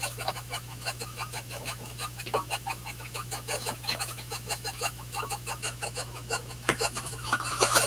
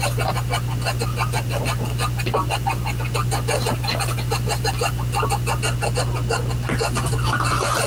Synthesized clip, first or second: first